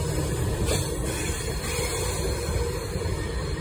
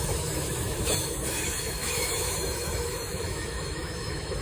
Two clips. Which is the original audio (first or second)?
first